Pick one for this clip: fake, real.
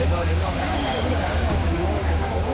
fake